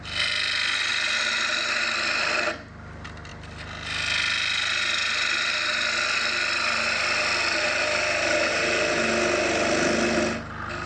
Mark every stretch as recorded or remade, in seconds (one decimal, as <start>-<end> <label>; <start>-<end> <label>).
0.0-10.9 recorded